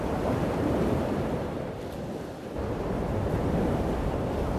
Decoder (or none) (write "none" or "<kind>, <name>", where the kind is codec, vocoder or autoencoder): none